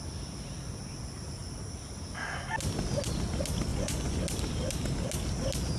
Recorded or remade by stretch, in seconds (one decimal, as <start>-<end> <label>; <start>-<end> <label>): 0.0-3.7 recorded; 3.7-4.2 remade; 4.2-5.8 recorded